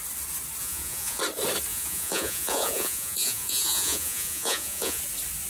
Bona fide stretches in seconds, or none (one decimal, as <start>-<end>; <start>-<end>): 0.0-0.6; 1.2-1.7; 5.0-5.5